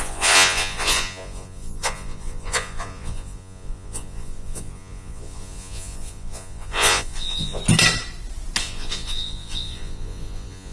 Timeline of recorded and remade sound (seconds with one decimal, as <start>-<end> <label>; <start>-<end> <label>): 0.0-7.6 remade; 7.6-8.6 recorded; 8.6-10.7 remade